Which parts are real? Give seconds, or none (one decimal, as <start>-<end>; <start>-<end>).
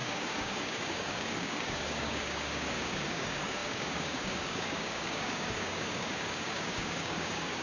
none